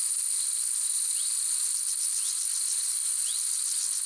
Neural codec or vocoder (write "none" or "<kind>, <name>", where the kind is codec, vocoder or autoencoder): none